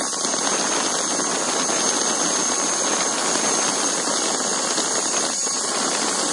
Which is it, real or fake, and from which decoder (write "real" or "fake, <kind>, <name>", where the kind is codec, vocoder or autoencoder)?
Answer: real